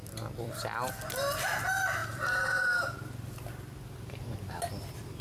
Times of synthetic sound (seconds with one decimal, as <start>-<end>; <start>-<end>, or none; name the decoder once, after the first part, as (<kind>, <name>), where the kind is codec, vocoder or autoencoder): 0.0-0.5 (vocoder, BigVGAN v2); 2.0-4.8

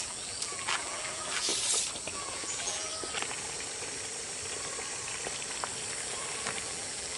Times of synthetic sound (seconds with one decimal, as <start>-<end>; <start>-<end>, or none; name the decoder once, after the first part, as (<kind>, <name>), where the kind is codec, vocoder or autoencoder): 0.0-1.5 (vocoder, BigVGAN v2); 2.1-2.9; 6.6-7.2

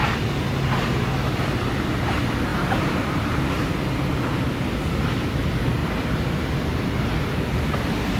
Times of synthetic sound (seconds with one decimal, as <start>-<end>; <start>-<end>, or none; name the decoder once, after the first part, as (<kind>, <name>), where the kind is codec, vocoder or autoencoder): 2.5-3.7 (vocoder, BigVGAN v2)